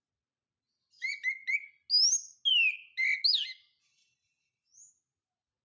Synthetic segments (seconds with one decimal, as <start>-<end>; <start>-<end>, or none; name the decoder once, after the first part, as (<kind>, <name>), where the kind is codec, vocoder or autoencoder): none